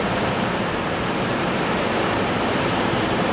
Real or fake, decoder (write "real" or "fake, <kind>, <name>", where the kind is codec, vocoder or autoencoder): fake, vocoder, BigVGAN v2